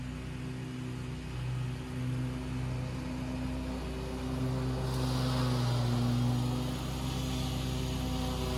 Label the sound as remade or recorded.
recorded